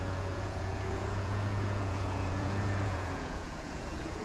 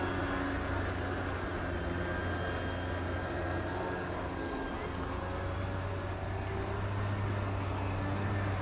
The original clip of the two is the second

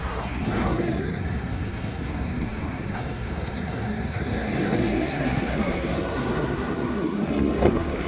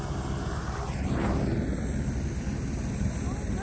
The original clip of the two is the second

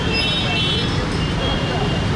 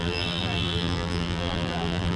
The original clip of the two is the first